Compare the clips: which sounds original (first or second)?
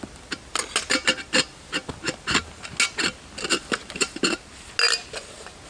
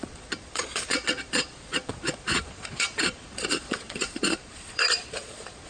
first